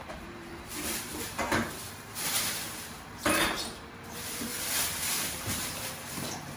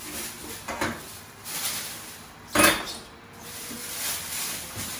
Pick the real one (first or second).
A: second